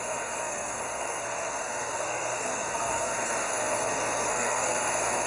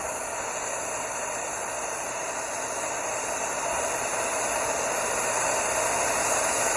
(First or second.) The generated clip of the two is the first